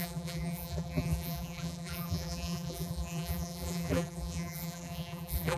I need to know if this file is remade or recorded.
remade